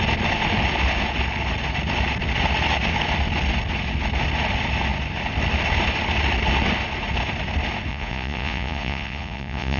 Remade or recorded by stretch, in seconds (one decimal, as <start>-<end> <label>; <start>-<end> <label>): 0.0-7.9 recorded; 7.9-9.8 remade